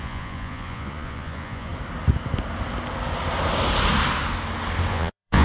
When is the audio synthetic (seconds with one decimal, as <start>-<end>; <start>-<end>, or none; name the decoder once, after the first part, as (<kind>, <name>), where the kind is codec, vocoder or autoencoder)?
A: 0.0-1.7 (vocoder, Vocos); 4.9-5.4